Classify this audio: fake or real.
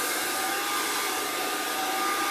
real